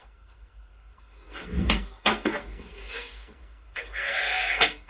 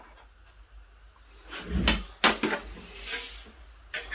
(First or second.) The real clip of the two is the second